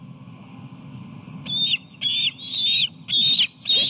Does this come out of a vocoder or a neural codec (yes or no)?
no